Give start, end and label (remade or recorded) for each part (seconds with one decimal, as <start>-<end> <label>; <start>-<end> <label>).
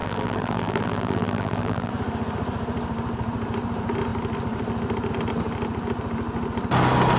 0.0-1.9 remade; 1.9-7.2 recorded